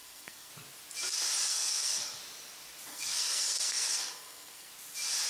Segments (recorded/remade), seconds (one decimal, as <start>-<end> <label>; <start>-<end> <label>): 0.0-0.5 remade; 0.5-1.5 recorded; 1.5-2.2 remade; 2.2-2.9 recorded; 2.9-4.7 remade; 4.7-5.3 recorded